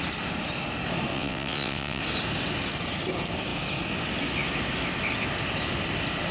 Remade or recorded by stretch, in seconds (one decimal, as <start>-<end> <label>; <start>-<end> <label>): 0.0-1.1 recorded; 1.1-2.0 remade; 2.0-6.3 recorded